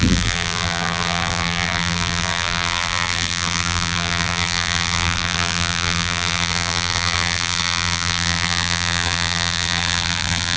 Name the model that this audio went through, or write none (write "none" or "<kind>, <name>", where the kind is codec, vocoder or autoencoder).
vocoder, BigVGAN v2